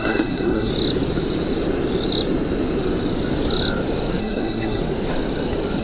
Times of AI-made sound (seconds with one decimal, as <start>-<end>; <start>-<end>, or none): 0.0-0.7; 4.2-4.8